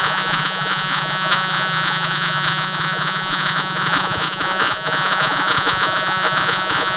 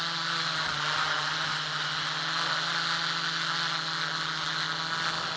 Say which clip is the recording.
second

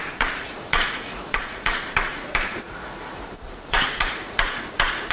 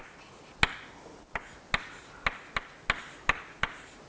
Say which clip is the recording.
second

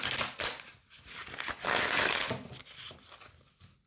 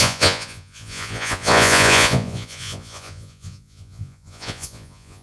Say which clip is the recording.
first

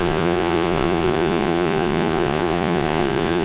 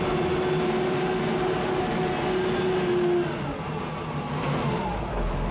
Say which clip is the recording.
second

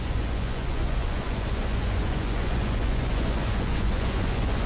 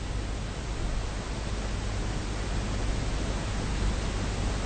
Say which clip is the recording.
second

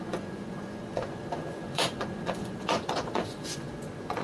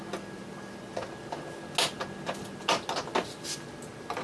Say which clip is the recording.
second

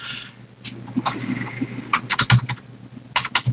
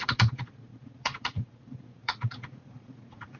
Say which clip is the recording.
first